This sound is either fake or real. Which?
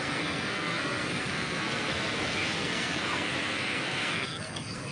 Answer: fake